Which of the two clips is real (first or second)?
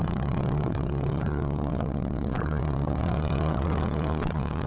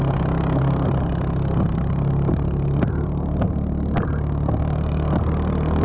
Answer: second